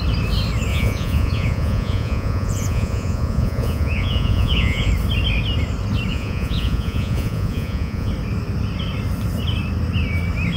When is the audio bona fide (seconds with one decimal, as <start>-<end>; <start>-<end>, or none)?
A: 0.0-0.7; 4.9-6.1; 8.1-10.6